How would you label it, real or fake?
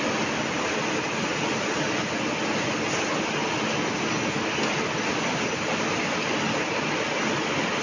real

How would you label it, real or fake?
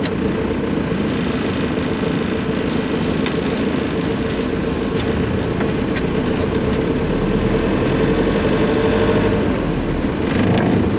real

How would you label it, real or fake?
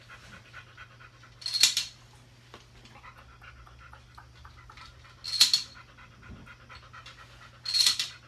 real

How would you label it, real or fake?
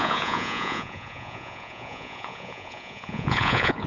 fake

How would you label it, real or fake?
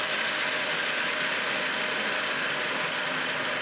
real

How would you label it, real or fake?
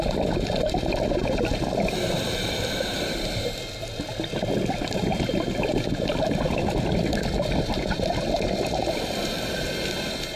real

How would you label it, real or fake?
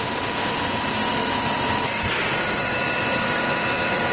real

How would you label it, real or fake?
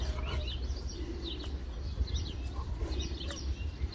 real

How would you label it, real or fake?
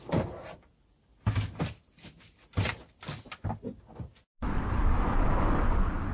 real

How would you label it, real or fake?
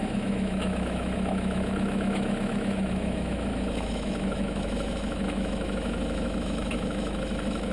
fake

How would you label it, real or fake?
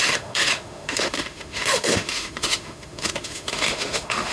fake